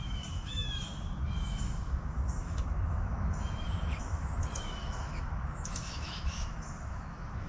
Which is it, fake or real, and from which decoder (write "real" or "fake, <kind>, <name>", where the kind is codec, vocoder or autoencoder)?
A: fake, autoencoder, DAC-VAE